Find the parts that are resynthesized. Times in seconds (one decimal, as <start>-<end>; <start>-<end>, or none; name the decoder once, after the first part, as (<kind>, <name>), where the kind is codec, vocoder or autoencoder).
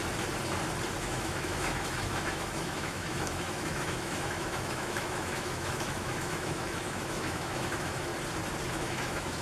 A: 1.0-8.1 (autoencoder, DAC-VAE); 8.7-9.4